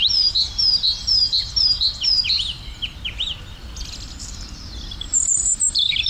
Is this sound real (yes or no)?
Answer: no